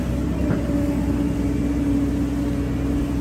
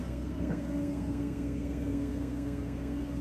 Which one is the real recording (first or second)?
first